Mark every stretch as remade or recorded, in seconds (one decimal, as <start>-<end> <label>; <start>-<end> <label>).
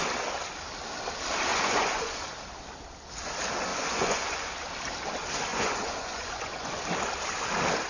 0.0-1.5 recorded; 1.5-2.3 remade; 2.3-3.7 recorded; 3.7-4.5 remade; 4.5-5.5 recorded; 5.5-6.8 remade; 6.8-7.9 recorded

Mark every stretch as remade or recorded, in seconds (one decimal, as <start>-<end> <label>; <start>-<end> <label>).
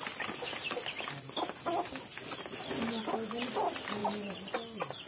0.0-5.1 recorded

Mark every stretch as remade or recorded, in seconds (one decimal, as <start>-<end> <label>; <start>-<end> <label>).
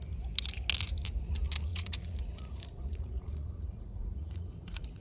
0.0-1.7 recorded; 1.7-5.0 remade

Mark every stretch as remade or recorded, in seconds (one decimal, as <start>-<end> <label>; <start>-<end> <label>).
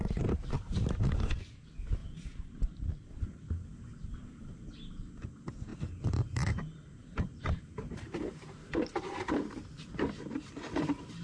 0.0-2.0 remade; 2.0-4.4 recorded; 4.4-11.2 remade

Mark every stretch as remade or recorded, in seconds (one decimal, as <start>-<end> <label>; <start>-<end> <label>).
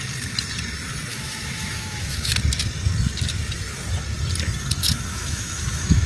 0.0-1.1 recorded; 1.1-2.3 remade; 2.3-4.8 recorded; 4.8-6.1 remade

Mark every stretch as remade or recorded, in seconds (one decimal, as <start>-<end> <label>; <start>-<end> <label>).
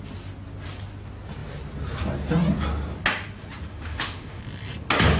0.0-3.7 recorded; 3.7-4.4 remade; 4.4-5.2 recorded